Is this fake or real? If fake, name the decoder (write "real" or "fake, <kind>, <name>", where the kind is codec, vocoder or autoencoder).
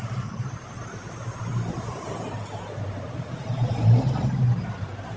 fake, vocoder, BigVGAN v2